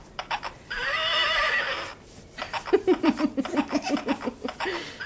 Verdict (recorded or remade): remade